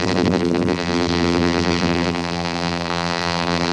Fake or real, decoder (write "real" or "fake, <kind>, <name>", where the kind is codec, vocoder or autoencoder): fake, vocoder, BigVGAN v2